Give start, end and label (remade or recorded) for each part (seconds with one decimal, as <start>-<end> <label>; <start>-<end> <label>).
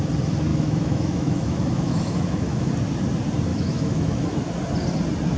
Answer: 0.0-0.5 recorded; 0.5-2.7 remade; 2.7-3.5 recorded; 3.5-4.5 remade; 4.5-5.4 recorded